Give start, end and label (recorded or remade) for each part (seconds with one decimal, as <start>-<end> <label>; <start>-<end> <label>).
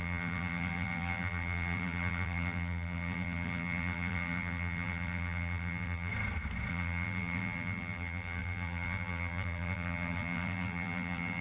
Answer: 0.0-6.1 remade; 6.1-6.7 recorded; 6.7-11.4 remade